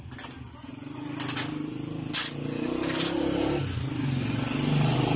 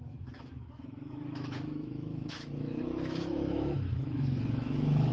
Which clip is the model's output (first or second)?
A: second